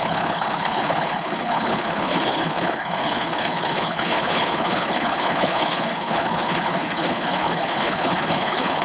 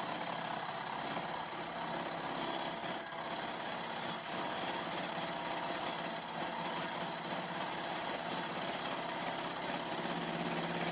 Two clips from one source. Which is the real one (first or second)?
second